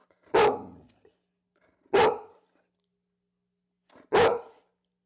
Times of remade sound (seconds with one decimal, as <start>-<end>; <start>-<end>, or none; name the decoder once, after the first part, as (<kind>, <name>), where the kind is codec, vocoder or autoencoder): none